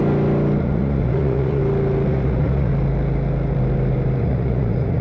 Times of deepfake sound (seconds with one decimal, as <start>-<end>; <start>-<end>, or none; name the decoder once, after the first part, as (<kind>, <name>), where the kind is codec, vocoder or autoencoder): 0.6-1.6 (vocoder, Vocos); 2.1-2.7; 4.2-5.0